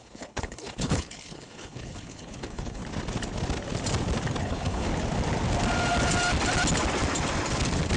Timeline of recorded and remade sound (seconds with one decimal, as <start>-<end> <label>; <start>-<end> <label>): 0.0-2.8 remade; 2.8-4.4 recorded; 4.4-4.9 remade; 4.9-8.0 recorded